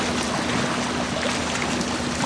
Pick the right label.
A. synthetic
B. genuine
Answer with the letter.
B